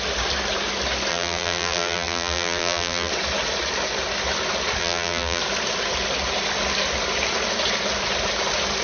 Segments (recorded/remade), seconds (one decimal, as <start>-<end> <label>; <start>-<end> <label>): 0.0-1.1 recorded; 1.1-3.1 remade; 3.1-4.8 recorded; 4.8-5.4 remade; 5.4-8.8 recorded